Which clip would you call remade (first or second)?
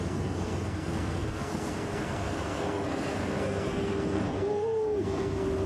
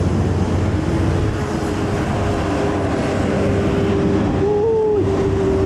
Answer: first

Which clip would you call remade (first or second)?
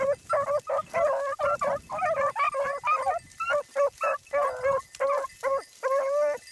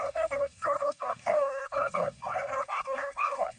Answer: second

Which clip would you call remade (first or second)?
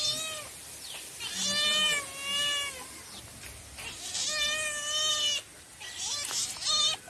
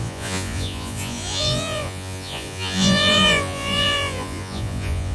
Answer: second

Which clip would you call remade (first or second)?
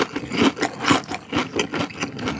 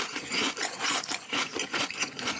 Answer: second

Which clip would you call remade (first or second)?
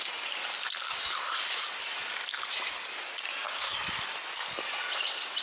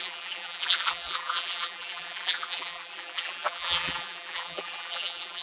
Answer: second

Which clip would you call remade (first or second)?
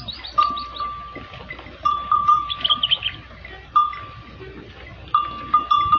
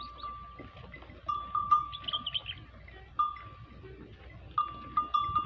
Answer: first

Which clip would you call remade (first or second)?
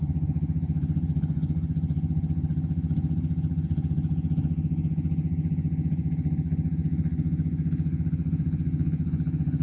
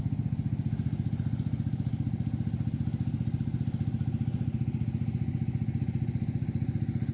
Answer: first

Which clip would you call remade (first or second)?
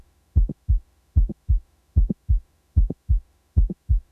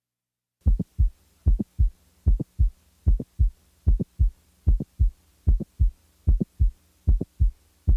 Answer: first